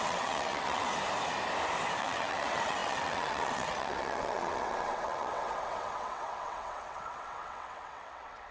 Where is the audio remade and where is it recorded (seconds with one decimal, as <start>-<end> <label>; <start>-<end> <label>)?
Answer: 0.0-0.9 remade; 0.9-2.0 recorded; 2.0-8.5 remade